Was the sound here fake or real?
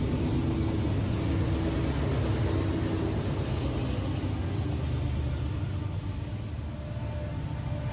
real